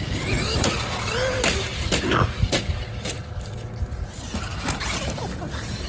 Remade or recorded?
recorded